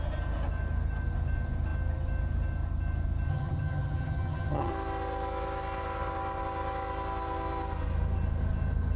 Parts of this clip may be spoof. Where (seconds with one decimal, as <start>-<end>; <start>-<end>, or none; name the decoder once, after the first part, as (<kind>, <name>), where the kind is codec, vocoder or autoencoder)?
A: 3.3-4.7 (vocoder, HiFi-GAN)